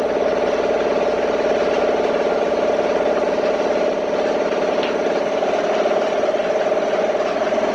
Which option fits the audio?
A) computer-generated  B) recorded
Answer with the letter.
B